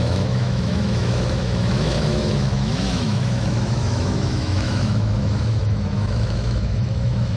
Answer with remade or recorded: remade